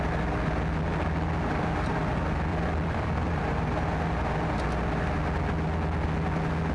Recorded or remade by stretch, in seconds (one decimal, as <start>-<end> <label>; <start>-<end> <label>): 0.0-2.5 recorded; 2.5-3.4 remade; 3.4-6.7 recorded